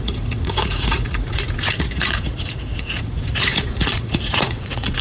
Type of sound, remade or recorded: remade